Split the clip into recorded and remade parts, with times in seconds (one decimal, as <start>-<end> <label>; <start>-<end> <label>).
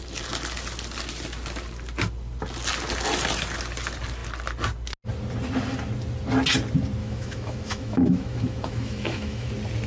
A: 0.0-7.0 recorded; 7.0-9.5 remade; 9.5-9.9 recorded